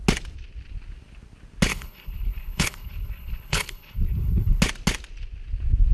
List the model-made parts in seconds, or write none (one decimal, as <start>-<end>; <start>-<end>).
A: 1.7-4.6